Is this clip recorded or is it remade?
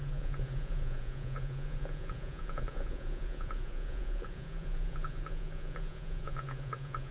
remade